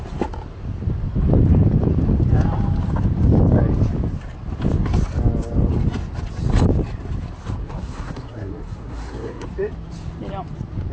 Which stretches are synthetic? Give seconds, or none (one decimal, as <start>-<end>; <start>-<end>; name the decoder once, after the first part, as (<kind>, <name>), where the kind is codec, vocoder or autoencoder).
7.6-9.5 (codec, SNAC)